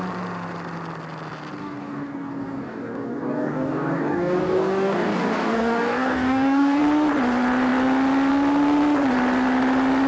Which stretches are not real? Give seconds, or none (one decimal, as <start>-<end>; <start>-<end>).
1.6-6.8